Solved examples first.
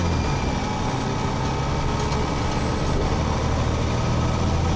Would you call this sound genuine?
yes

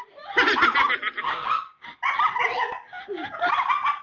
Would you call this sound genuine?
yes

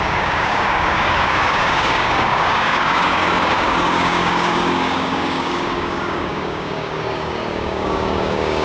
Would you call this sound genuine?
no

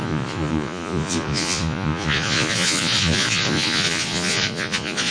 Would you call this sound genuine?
no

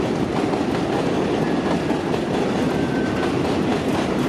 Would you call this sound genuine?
yes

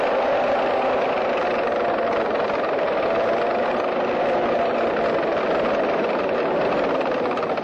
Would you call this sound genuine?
yes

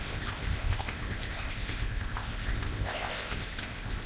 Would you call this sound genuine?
no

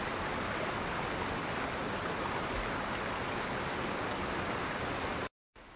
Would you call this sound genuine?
yes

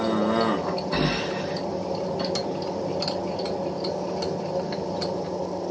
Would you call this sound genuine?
yes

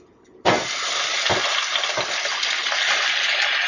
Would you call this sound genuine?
yes